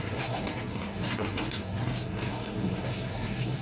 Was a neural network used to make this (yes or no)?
yes